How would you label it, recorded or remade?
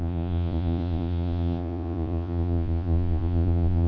remade